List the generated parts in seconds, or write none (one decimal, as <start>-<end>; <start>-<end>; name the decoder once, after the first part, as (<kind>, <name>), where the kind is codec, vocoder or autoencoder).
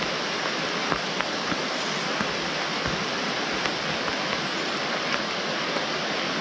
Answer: 0.8-2.1 (vocoder, BigVGAN v2)